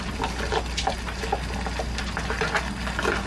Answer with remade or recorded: recorded